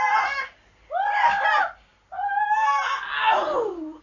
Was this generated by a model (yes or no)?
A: no